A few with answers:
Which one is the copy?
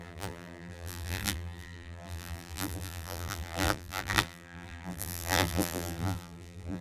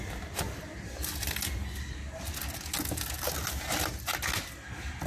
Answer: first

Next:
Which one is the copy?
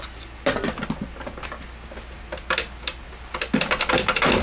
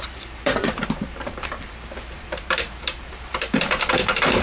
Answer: second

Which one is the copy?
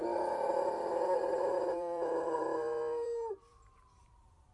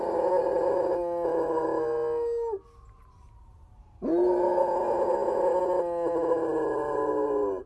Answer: first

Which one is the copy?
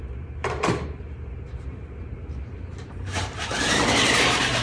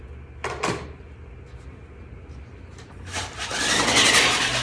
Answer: first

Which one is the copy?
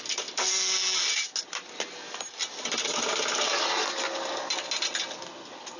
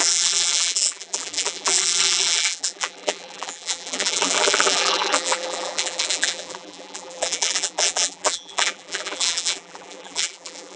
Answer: second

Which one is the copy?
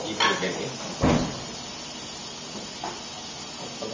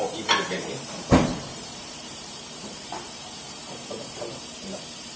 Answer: second